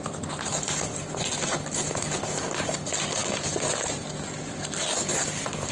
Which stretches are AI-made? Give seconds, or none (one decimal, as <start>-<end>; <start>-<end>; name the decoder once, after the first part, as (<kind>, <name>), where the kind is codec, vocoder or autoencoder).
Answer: none